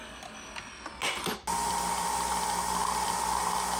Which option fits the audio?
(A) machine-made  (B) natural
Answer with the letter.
B